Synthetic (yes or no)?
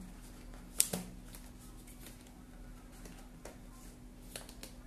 no